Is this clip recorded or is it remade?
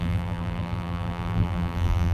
remade